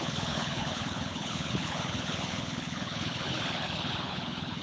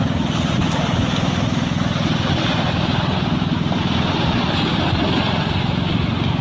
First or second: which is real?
second